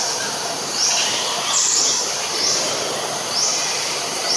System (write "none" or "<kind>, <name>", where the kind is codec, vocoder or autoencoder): vocoder, BigVGAN v2